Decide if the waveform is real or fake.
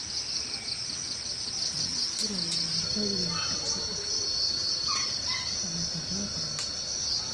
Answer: real